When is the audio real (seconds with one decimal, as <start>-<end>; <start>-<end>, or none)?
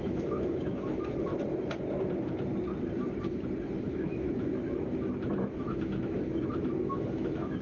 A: 1.3-3.8; 4.5-5.4